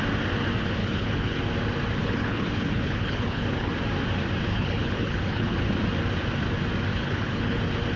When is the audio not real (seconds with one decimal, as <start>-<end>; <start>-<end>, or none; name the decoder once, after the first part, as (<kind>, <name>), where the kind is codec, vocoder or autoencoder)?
0.8-1.4 (codec, HILCodec); 2.0-3.7; 4.5-5.6; 6.9-7.6